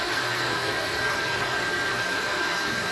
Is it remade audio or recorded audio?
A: remade